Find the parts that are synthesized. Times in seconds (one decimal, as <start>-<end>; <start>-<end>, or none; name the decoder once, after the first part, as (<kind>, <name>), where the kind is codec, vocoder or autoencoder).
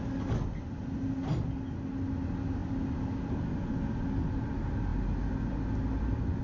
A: none